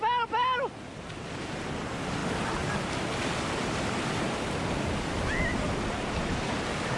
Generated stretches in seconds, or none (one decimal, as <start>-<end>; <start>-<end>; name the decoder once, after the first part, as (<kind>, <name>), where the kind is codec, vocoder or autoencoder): none